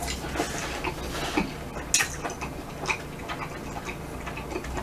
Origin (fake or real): real